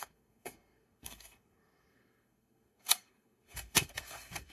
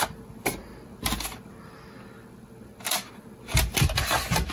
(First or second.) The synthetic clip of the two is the first